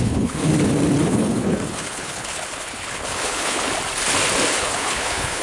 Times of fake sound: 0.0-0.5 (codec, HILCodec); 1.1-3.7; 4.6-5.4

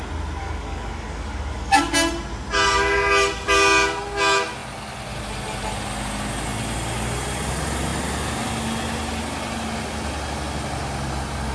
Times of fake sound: 0.4-1.8 (codec, DAC)

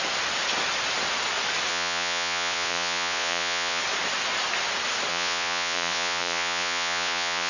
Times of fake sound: 1.7-3.8 (vocoder, Vocos); 5.1-7.5

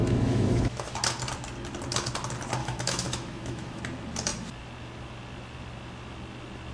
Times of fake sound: 0.0-0.9 (autoencoder, DAC-VAE); 2.6-3.8

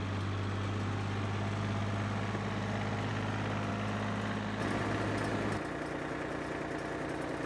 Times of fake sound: none